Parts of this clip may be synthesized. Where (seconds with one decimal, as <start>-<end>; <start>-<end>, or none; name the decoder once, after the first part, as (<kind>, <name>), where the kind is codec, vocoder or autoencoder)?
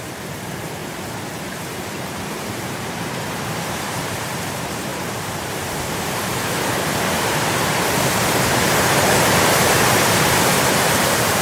0.0-0.8 (vocoder, BigVGAN v2); 1.4-11.4